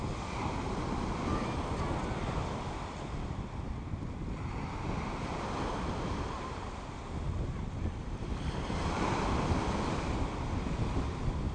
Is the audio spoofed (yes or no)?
no